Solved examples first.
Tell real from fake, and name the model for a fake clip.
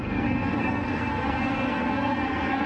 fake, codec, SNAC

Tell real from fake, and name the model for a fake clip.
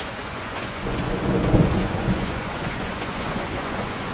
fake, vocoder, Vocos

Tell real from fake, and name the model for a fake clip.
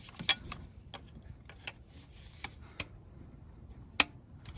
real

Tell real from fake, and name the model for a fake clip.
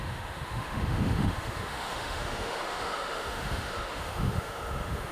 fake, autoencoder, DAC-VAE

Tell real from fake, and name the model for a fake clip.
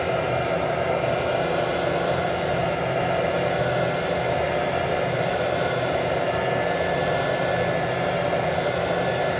real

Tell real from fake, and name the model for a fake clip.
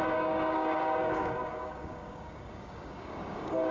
fake, codec, DAC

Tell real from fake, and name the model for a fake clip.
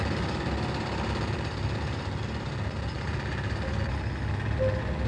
real